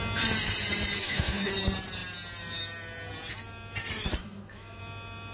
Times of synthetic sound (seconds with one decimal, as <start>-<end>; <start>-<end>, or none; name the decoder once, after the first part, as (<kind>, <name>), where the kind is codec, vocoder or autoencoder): 1.0-1.5 (autoencoder, DAC-VAE); 4.2-4.8